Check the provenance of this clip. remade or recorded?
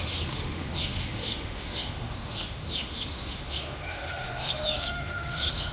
remade